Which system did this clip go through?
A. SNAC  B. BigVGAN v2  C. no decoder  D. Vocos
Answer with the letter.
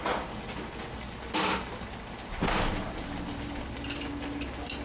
C